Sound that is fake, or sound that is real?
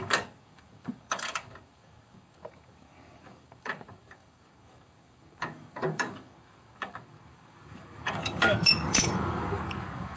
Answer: fake